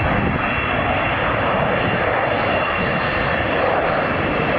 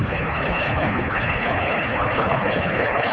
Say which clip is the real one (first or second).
first